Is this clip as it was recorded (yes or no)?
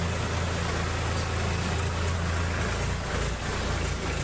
yes